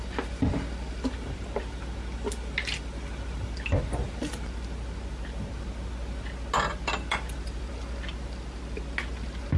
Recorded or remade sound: recorded